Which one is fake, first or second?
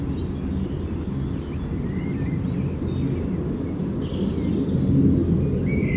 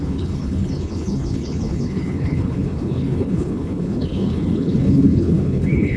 second